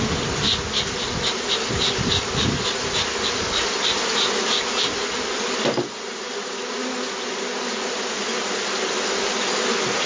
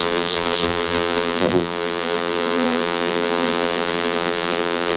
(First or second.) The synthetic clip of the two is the second